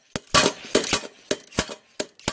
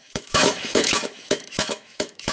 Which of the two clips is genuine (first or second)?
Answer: first